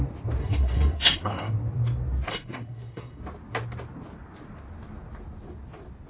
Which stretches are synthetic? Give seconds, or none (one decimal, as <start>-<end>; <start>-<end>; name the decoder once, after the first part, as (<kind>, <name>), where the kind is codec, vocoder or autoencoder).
0.4-1.5 (codec, SNAC); 2.3-3.2